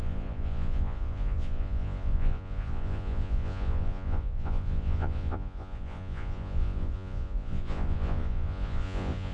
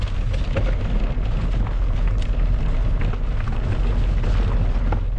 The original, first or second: second